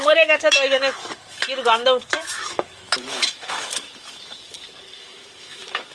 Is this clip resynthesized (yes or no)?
yes